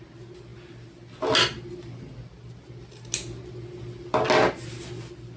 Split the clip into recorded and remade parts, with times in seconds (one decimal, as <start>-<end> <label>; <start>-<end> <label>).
0.0-5.4 recorded